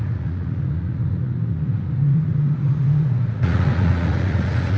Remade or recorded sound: remade